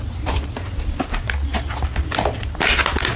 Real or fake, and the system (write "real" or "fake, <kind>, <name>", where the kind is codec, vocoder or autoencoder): fake, vocoder, BigVGAN v2